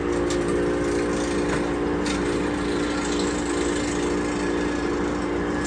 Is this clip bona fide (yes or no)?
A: yes